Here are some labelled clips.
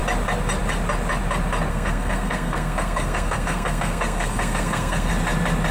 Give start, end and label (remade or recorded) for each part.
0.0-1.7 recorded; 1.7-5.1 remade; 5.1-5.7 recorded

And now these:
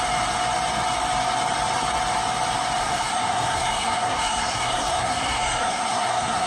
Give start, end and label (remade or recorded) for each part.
0.0-2.8 recorded; 2.8-6.5 remade

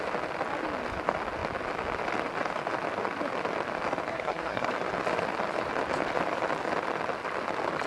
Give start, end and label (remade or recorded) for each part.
0.0-4.1 recorded; 4.1-4.7 remade; 4.7-7.9 recorded

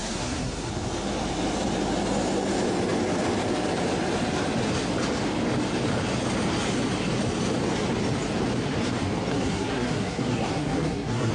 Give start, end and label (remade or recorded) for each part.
0.0-0.7 remade; 0.7-9.3 recorded; 9.3-11.3 remade

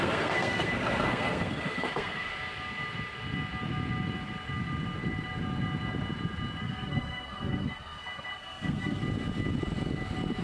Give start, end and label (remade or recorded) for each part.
0.0-2.3 remade; 2.3-6.6 recorded; 6.6-9.0 remade; 9.0-10.4 recorded

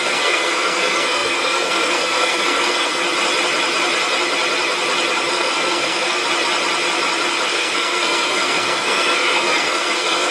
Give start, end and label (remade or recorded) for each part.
0.0-3.0 remade; 3.0-5.3 recorded; 5.3-6.2 remade; 6.2-7.5 recorded; 7.5-10.3 remade